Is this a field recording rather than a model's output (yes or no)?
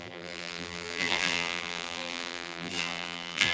no